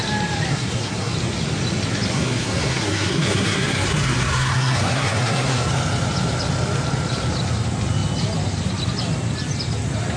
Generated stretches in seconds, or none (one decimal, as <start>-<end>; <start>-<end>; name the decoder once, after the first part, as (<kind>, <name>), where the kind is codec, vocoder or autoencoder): 0.5-1.1 (codec, SNAC); 2.1-5.7